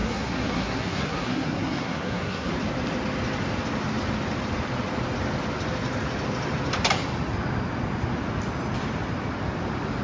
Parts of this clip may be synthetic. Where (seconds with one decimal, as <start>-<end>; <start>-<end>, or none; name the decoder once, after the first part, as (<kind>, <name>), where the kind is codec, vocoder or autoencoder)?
0.0-2.5 (codec, SNAC)